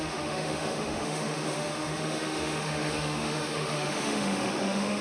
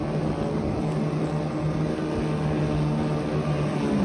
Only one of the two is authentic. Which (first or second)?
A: second